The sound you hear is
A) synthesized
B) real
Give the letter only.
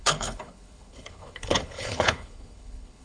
A